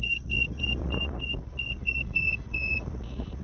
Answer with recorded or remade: remade